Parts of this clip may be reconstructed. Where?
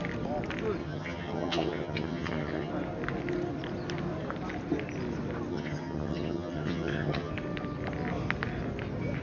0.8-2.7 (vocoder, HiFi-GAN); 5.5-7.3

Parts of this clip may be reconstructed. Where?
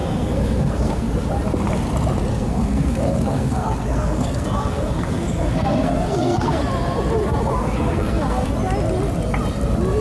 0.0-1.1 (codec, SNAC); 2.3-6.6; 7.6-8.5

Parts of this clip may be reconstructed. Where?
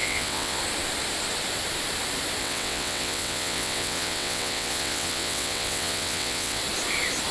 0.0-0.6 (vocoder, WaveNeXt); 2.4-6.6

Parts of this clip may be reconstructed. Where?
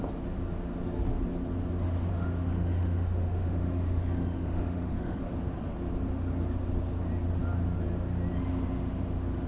2.1-5.2 (autoencoder, DAC-VAE)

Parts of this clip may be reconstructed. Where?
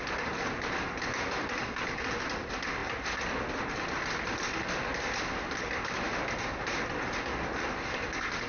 none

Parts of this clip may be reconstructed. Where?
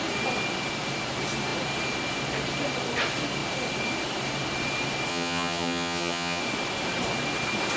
5.1-6.4 (vocoder, HiFi-GAN)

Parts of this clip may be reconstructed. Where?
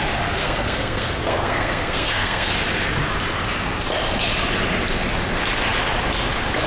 0.4-2.5 (codec, SNAC)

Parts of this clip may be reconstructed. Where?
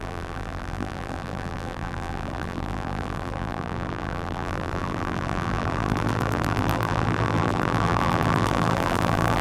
0.0-9.4 (vocoder, BigVGAN v2)